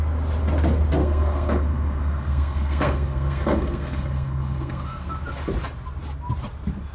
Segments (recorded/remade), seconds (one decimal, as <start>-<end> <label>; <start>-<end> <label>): 0.0-1.0 recorded; 1.0-5.1 remade; 5.1-6.9 recorded